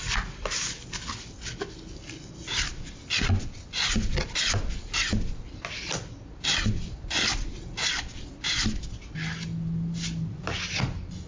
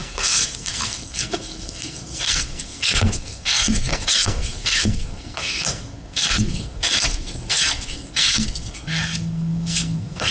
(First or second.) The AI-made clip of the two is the second